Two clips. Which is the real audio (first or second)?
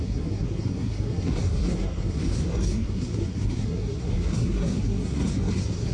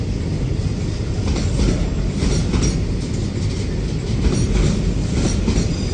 second